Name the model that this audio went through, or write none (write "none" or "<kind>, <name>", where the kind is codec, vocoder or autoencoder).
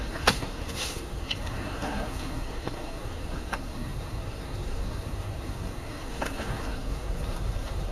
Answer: codec, SNAC